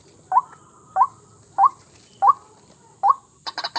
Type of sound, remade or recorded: recorded